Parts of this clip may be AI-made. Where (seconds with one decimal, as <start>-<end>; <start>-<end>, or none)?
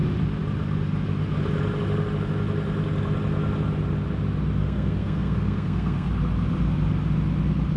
4.6-6.1